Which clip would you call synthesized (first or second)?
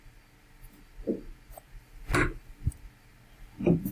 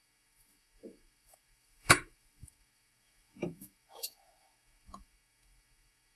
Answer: second